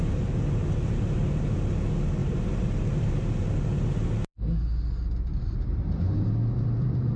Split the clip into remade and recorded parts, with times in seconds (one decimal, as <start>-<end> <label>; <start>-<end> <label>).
0.0-2.2 recorded; 2.2-3.1 remade; 3.1-5.3 recorded; 5.3-7.2 remade

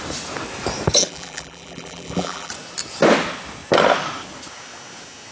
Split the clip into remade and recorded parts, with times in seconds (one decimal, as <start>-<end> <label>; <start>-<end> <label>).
0.0-1.0 recorded; 1.0-2.5 remade; 2.5-5.3 recorded

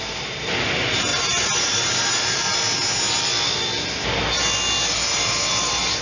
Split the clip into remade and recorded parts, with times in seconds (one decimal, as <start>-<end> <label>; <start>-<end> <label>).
0.0-2.5 remade; 2.5-4.9 recorded; 4.9-6.0 remade

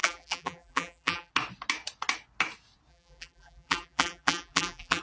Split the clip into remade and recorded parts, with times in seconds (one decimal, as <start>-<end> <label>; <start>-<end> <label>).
0.0-1.3 remade; 1.3-2.9 recorded; 2.9-5.0 remade

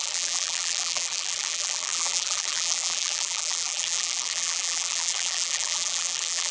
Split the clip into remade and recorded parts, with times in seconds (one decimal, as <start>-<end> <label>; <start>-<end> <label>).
0.0-6.5 remade